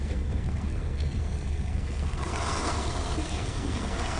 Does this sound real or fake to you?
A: fake